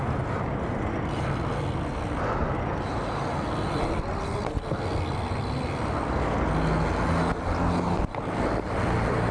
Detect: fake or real real